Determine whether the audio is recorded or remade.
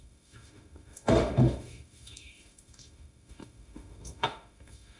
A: remade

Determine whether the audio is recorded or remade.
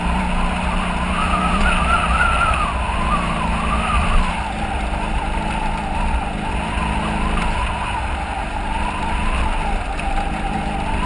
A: recorded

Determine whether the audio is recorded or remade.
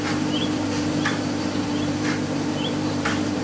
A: remade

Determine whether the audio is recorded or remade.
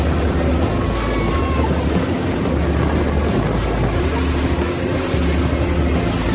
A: recorded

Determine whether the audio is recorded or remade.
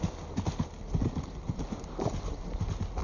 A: recorded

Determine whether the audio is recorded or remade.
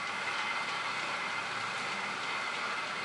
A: recorded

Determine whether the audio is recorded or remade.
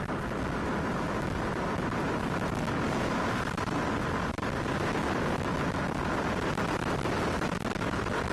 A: recorded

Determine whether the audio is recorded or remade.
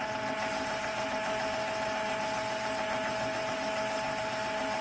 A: recorded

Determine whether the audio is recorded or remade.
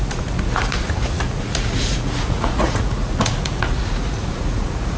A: remade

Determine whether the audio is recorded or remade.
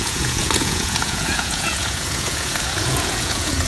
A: remade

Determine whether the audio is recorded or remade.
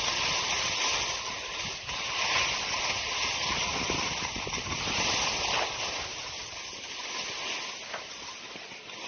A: recorded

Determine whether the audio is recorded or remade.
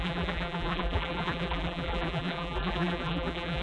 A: remade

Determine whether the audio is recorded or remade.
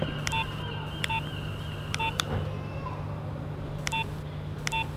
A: recorded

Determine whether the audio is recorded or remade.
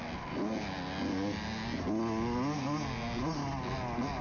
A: recorded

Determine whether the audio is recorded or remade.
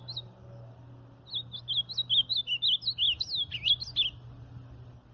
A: recorded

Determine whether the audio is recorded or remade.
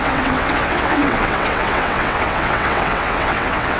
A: remade